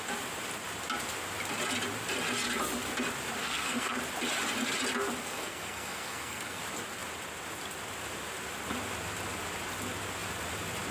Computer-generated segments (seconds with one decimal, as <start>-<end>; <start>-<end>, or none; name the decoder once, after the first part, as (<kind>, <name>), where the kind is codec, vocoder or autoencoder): 3.4-4.0 (codec, SNAC); 5.2-6.6